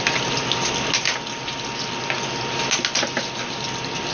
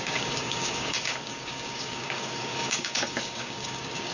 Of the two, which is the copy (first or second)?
second